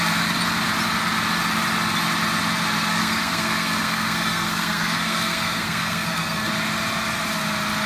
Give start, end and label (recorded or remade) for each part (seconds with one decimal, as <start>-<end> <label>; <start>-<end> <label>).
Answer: 0.0-2.9 recorded; 2.9-6.5 remade; 6.5-7.9 recorded